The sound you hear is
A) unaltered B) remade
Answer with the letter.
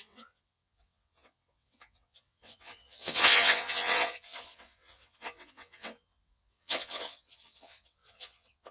B